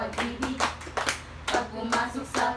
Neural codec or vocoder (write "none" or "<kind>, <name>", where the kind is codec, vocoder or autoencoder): none